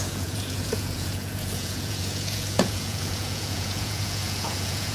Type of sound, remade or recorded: remade